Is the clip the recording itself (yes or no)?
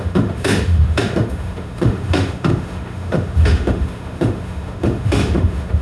no